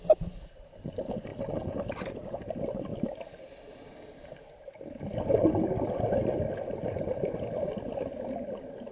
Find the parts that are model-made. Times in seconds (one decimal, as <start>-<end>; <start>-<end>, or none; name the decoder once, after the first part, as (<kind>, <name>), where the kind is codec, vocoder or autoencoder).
none